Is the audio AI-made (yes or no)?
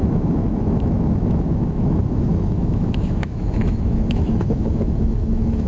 yes